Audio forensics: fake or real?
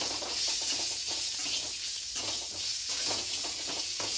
fake